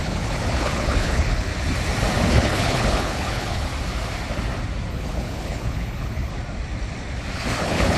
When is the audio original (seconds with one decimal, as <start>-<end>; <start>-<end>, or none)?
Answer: 1.5-2.3; 3.7-4.9; 6.3-7.6